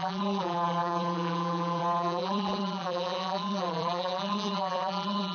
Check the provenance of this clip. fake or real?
fake